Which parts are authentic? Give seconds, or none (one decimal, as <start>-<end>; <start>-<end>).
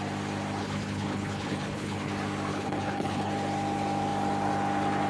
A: 0.0-0.6; 2.1-2.5; 3.3-5.1